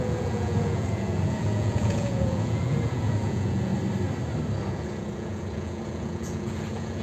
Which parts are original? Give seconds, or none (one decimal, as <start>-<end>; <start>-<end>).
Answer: 3.7-4.7